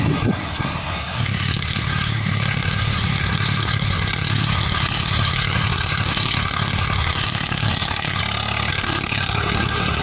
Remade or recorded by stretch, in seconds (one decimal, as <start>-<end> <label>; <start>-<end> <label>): 0.0-8.2 remade; 8.2-8.7 recorded; 8.7-10.0 remade